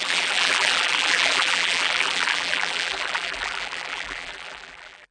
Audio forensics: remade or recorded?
remade